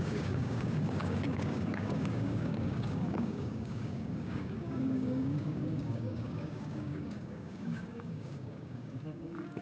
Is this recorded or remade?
remade